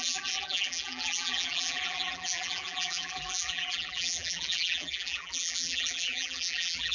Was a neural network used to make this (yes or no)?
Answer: yes